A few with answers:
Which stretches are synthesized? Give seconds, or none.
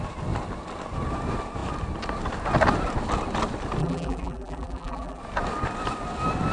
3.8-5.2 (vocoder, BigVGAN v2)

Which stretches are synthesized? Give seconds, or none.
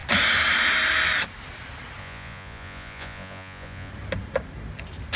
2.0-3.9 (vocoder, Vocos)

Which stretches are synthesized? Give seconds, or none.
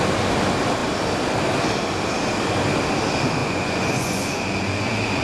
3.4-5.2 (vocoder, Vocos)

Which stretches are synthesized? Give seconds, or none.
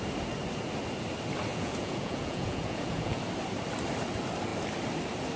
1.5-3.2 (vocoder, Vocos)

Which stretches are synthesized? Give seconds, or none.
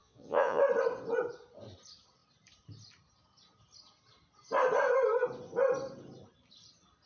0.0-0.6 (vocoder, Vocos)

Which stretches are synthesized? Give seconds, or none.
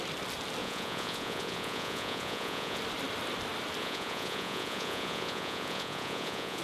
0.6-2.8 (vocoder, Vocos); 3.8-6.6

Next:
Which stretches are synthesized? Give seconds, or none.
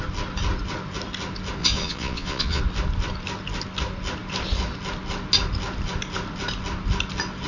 1.6-2.6 (vocoder, Vocos)